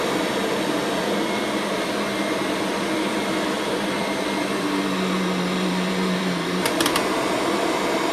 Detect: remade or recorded remade